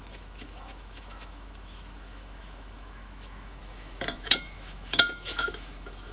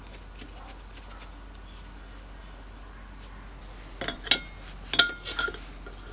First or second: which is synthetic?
first